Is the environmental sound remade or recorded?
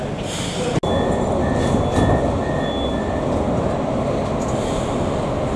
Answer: recorded